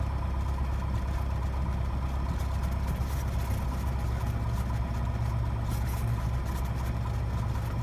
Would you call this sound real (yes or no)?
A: yes